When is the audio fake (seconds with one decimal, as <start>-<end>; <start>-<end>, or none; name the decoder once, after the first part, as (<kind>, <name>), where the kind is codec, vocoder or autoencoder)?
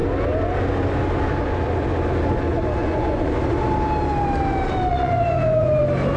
2.8-3.3 (vocoder, Vocos); 4.9-5.8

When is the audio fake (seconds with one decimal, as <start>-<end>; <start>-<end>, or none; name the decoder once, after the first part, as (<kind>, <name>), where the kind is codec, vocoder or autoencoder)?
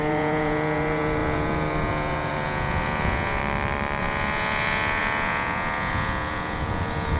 0.0-3.4 (vocoder, Vocos); 4.0-7.2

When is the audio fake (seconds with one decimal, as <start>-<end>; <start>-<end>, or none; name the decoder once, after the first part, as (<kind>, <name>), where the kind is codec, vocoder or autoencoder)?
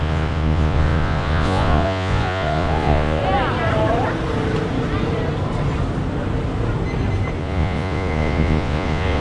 0.0-3.2 (vocoder, Vocos); 7.4-9.2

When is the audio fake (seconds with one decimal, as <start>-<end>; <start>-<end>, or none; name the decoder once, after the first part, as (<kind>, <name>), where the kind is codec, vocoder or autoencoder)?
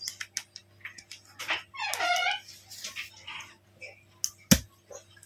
none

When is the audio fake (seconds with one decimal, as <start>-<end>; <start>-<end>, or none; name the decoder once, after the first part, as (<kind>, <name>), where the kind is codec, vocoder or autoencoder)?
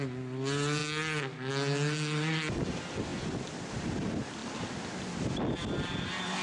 none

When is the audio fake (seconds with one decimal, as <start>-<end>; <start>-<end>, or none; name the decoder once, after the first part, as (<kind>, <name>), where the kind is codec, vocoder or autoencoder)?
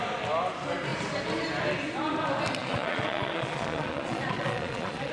2.6-5.1 (vocoder, Vocos)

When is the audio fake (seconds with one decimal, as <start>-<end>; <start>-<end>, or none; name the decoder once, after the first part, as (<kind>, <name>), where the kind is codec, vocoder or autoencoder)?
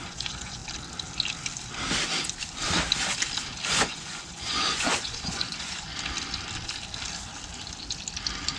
0.0-0.6 (vocoder, Vocos); 3.7-5.9